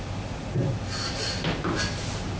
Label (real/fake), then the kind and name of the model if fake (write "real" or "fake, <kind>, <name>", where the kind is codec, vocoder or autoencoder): real